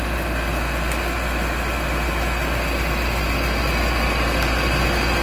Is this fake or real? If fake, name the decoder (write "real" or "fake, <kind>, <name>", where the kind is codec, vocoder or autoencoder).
real